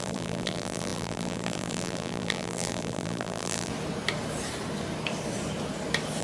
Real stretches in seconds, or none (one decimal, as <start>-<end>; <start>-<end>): 3.7-6.2